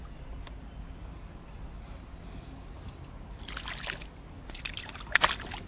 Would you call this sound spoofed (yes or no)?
no